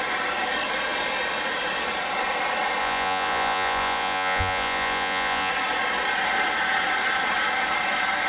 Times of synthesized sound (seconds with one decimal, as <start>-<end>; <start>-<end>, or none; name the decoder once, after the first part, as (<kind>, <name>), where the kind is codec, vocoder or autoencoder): 2.8-5.5 (vocoder, Vocos)